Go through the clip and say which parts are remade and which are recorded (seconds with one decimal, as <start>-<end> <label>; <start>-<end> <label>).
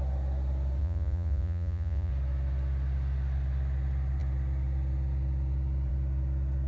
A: 0.0-0.8 recorded; 0.8-2.1 remade; 2.1-6.7 recorded